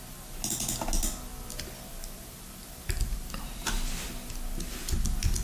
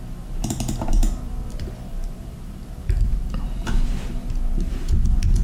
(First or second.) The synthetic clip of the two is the second